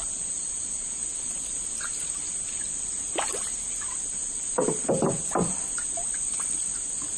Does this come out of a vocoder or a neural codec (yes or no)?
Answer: no